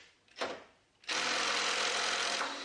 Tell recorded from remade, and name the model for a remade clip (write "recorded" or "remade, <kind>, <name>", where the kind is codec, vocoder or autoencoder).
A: recorded